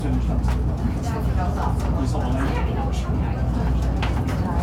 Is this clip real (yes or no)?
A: yes